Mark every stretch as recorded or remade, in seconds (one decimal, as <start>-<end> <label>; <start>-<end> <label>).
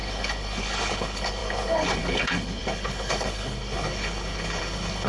0.0-5.1 remade